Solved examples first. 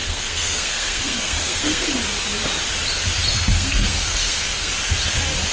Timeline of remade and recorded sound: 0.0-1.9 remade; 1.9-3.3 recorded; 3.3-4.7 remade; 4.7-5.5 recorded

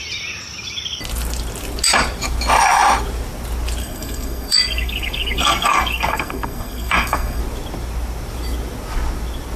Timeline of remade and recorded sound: 0.0-3.8 recorded; 3.8-7.4 remade; 7.4-9.6 recorded